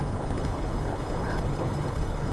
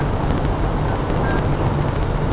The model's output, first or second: first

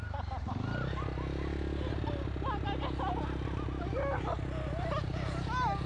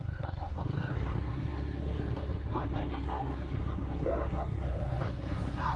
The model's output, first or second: second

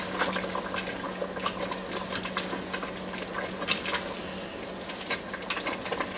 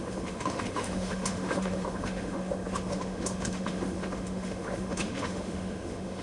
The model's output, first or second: second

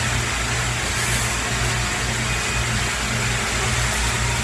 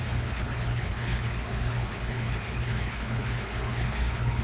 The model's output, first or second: second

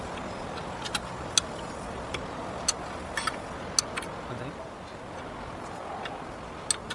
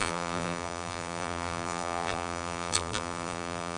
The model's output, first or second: second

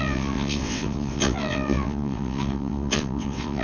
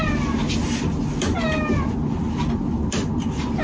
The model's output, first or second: first